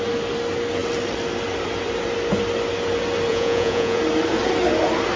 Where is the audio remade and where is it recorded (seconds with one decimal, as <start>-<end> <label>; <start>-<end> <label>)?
0.0-3.3 recorded; 3.3-4.0 remade; 4.0-5.2 recorded